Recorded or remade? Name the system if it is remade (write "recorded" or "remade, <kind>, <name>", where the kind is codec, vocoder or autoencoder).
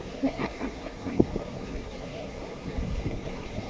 remade, codec, SNAC